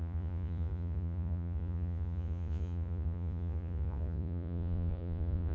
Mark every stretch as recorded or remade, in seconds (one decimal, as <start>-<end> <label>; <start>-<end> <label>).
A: 0.0-5.5 remade